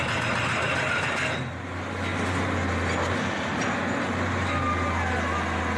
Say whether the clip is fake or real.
real